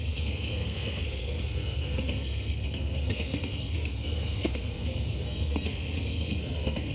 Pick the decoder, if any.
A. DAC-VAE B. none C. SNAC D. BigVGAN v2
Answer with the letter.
C